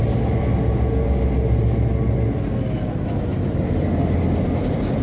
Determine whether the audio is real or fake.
real